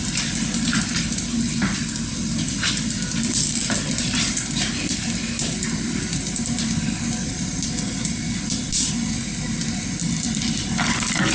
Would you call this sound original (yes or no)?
no